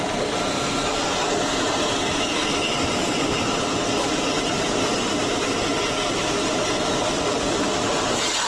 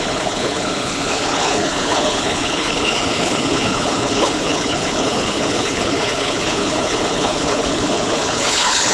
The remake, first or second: second